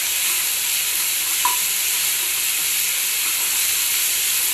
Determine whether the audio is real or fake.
real